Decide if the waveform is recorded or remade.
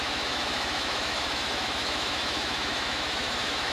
remade